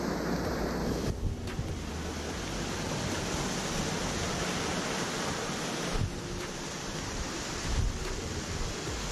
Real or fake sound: real